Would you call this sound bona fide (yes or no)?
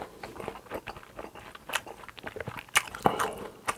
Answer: yes